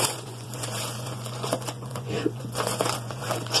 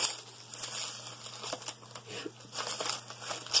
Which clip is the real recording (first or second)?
second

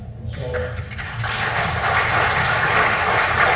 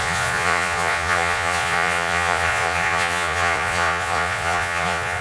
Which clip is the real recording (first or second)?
first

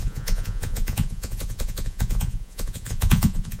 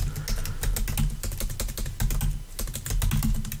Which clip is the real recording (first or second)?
second